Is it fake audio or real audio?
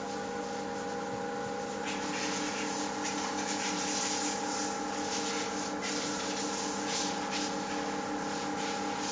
real